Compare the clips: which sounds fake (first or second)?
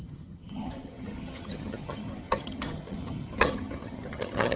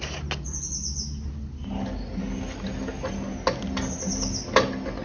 first